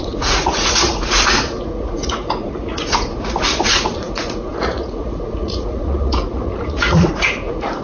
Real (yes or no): no